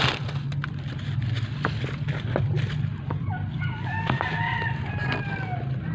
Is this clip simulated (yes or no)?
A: no